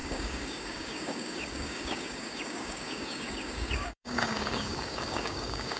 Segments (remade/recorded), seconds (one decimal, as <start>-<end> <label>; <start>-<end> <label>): 0.0-5.8 remade